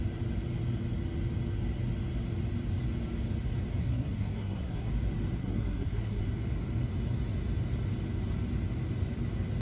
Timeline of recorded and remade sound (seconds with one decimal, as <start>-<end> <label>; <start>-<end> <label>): 0.0-3.8 recorded; 3.8-4.9 remade; 4.9-5.4 recorded; 5.4-6.2 remade; 6.2-9.6 recorded